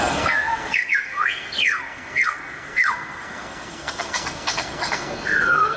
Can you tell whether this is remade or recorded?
remade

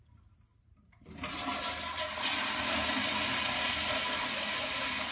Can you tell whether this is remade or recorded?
recorded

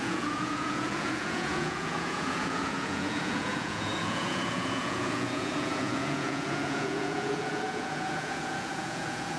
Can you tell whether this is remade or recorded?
remade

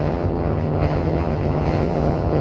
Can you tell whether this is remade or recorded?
remade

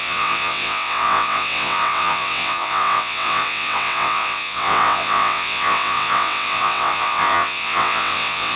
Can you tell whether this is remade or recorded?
remade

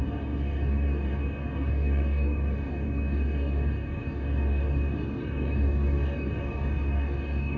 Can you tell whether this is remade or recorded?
remade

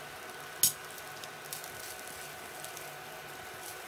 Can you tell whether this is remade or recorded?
recorded